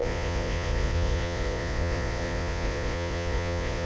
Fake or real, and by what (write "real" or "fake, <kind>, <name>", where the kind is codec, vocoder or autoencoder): fake, vocoder, Vocos